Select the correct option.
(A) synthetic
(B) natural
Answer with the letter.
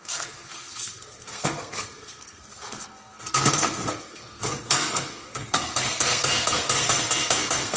A